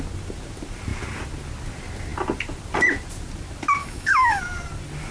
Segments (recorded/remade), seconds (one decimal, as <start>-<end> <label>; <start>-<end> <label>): 0.0-3.8 recorded; 3.8-4.4 remade; 4.4-5.1 recorded